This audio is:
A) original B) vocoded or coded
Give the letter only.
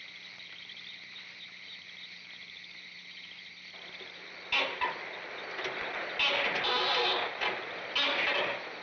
A